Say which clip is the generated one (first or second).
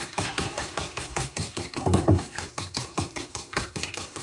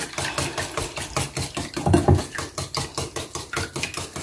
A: first